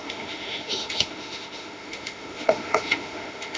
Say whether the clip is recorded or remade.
remade